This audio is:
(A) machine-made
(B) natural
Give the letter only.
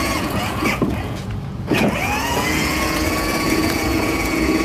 A